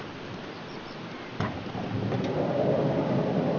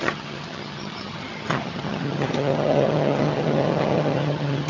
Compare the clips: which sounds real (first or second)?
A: first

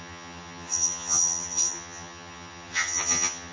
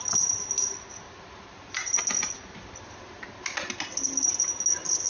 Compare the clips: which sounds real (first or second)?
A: second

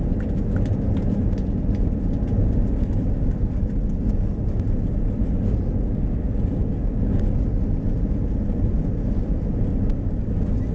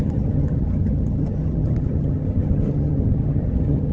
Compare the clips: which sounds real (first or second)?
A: first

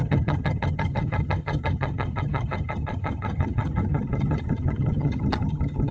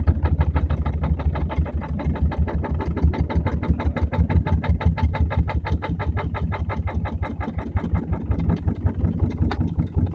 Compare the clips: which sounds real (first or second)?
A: second